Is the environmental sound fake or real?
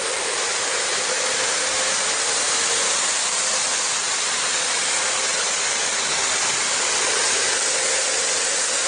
real